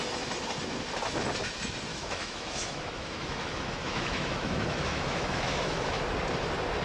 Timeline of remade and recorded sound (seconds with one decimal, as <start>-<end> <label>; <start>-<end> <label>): 0.0-1.9 recorded; 1.9-6.0 remade; 6.0-6.8 recorded